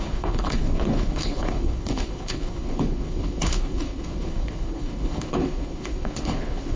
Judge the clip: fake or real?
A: fake